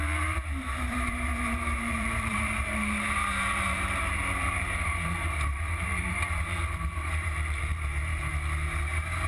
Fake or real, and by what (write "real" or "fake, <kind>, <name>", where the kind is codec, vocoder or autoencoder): fake, vocoder, BigVGAN v2